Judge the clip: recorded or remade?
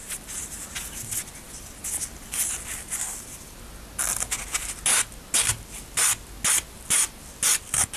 recorded